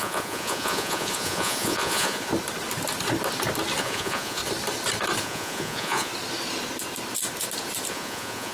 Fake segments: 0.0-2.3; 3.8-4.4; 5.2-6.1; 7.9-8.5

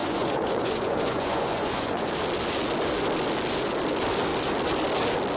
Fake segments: 0.0-2.1